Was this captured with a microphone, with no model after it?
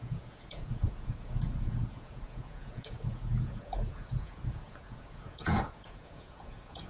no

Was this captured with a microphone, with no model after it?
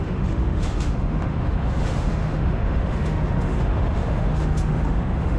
no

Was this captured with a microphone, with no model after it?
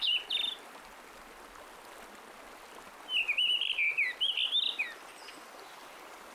yes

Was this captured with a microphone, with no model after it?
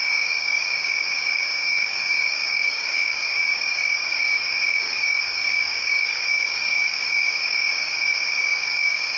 no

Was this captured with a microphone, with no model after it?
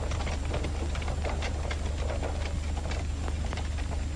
yes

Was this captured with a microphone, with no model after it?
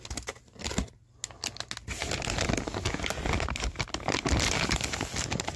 yes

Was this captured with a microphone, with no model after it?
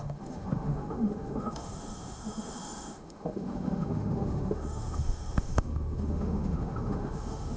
no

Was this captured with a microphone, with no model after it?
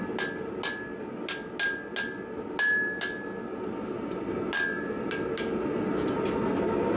yes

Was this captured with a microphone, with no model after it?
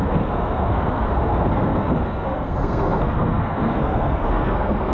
no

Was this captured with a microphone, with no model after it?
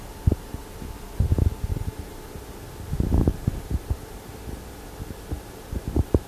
yes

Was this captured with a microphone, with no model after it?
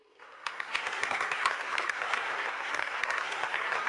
no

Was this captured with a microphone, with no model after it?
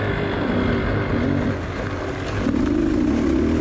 yes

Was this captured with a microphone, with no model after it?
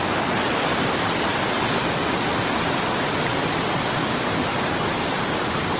yes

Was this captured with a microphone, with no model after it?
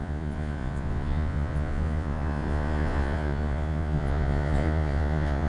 no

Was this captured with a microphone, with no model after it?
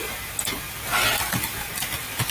yes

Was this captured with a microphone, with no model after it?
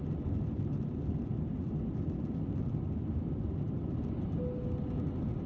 yes